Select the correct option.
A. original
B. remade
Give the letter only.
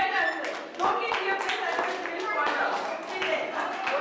A